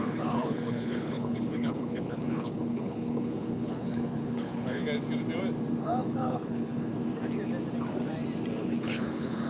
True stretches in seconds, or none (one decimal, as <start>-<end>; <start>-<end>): 4.8-5.8; 6.9-8.6